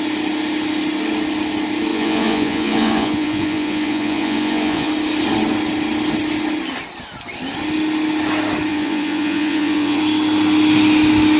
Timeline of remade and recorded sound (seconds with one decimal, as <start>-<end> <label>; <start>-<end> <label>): 0.0-1.9 recorded; 1.9-4.9 remade; 4.9-8.7 recorded; 8.7-10.0 remade; 10.0-11.4 recorded

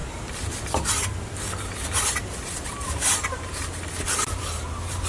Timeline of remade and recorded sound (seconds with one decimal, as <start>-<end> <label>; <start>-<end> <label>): 0.0-5.1 recorded

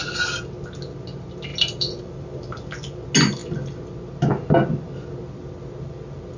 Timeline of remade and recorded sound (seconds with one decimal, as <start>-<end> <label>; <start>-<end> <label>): 0.0-1.5 recorded; 1.5-2.6 remade; 2.6-6.4 recorded

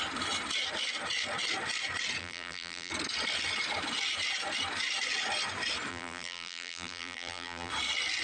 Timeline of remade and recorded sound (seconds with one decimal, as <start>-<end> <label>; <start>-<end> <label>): 0.0-2.2 recorded; 2.2-2.9 remade; 2.9-5.9 recorded; 5.9-7.7 remade; 7.7-8.2 recorded

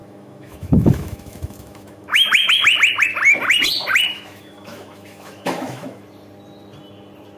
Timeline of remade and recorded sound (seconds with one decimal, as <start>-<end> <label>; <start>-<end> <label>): 0.0-2.5 remade; 2.5-4.1 recorded; 4.1-6.0 remade; 6.0-7.4 recorded

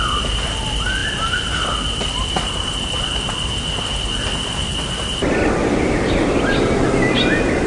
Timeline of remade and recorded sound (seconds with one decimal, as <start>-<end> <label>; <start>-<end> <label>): 0.0-7.7 recorded

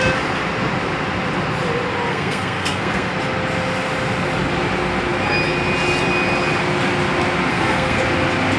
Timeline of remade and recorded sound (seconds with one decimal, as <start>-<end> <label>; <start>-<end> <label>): 0.0-2.1 recorded; 2.1-3.1 remade; 3.1-7.5 recorded; 7.5-8.0 remade; 8.0-8.6 recorded

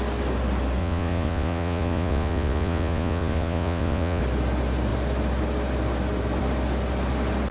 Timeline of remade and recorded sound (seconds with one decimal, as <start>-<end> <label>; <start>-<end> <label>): 0.0-0.8 recorded; 0.8-4.2 remade; 4.2-7.5 recorded